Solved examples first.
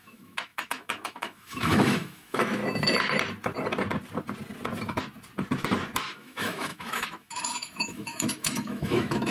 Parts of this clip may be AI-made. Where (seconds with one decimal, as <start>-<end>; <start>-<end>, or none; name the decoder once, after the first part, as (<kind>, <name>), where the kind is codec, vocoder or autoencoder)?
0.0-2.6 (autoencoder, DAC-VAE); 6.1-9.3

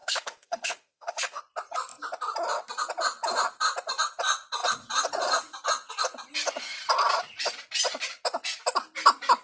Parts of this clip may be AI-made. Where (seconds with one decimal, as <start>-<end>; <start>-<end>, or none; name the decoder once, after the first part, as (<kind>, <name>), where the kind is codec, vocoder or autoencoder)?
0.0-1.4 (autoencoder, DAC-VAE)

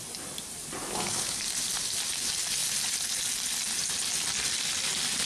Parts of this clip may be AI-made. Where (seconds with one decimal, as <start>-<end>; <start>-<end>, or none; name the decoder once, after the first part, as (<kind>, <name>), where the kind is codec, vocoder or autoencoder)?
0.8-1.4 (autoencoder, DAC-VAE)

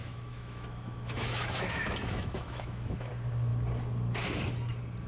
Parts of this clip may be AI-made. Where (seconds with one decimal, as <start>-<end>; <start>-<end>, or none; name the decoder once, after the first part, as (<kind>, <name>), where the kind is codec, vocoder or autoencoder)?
0.0-3.1 (autoencoder, DAC-VAE)